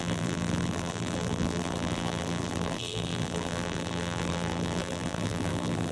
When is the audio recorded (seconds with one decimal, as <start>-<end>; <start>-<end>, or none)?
none